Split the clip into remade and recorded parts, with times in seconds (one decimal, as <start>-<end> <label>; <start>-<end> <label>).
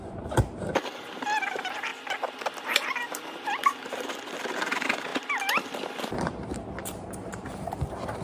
0.0-1.9 remade; 1.9-2.4 recorded; 2.4-3.6 remade; 3.6-4.6 recorded; 4.6-5.1 remade; 5.1-6.8 recorded; 6.8-8.2 remade